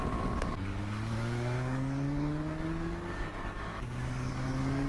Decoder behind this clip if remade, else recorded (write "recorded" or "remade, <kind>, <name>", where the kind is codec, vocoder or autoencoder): remade, codec, DAC